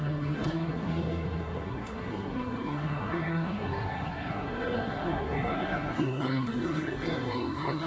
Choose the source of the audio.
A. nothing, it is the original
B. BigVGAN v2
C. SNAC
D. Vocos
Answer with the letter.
C